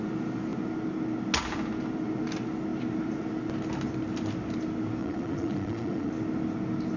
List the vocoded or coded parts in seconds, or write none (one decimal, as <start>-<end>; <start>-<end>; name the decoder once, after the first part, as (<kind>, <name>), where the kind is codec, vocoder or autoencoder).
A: 5.0-6.1 (vocoder, Vocos)